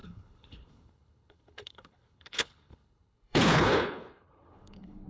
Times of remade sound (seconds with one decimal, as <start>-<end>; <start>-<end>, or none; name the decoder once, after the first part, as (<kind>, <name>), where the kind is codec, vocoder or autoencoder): 0.0-5.1 (codec, HILCodec)